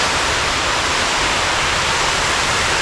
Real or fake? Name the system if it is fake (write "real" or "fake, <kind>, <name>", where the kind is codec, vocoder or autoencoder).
fake, vocoder, BigVGAN v2